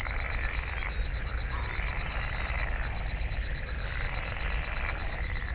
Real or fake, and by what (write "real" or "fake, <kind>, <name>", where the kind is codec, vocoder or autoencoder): real